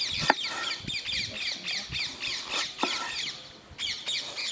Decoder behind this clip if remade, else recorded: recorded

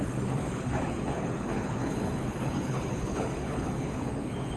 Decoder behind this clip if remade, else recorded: remade, codec, HILCodec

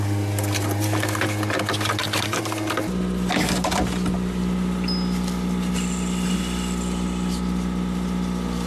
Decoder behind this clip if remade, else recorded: recorded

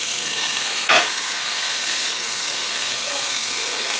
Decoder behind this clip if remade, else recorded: remade, codec, SNAC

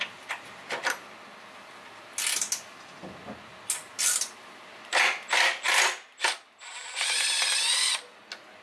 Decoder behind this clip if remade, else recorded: recorded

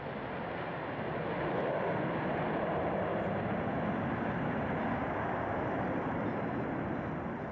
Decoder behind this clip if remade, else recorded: recorded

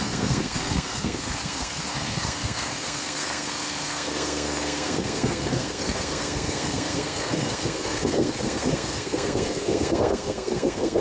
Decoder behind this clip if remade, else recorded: remade, codec, SNAC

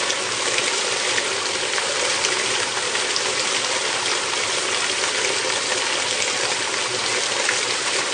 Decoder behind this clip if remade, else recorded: recorded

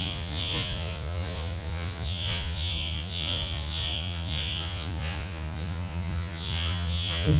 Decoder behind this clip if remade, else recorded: remade, vocoder, Vocos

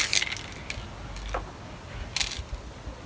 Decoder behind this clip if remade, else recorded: recorded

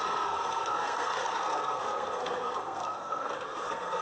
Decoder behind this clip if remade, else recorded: remade, codec, SNAC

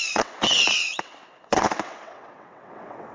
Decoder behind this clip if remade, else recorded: remade, vocoder, WaveNeXt